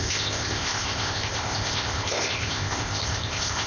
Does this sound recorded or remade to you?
remade